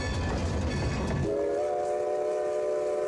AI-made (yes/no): no